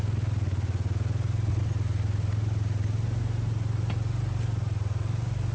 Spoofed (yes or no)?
no